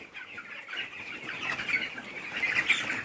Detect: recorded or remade recorded